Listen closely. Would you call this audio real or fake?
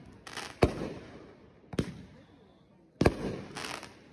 real